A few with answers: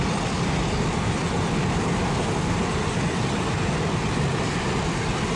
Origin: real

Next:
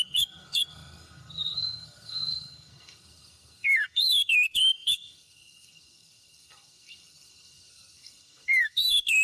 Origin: fake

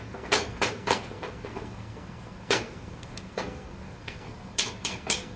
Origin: fake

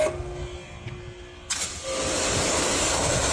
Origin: real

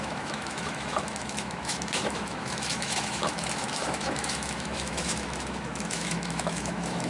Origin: fake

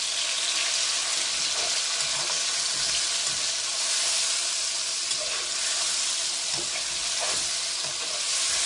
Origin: real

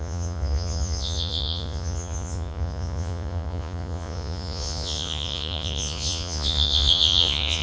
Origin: fake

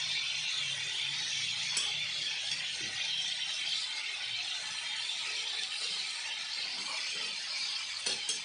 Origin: real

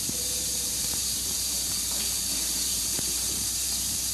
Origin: fake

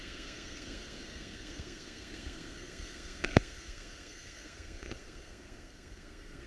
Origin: fake